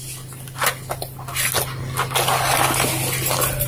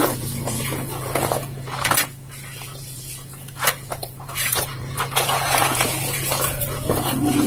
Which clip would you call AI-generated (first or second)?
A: second